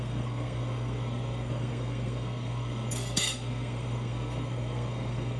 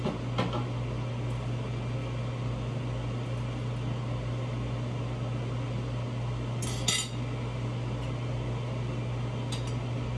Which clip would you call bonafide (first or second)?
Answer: second